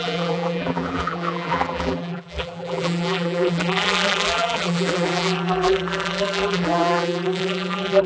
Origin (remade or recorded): remade